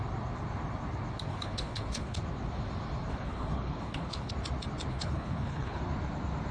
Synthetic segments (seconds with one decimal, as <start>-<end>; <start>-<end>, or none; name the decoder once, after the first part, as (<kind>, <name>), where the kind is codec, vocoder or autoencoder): 1.3-2.2 (codec, HILCodec); 3.1-4.3; 4.9-5.8